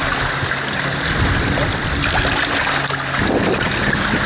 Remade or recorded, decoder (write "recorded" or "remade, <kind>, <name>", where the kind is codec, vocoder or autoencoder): recorded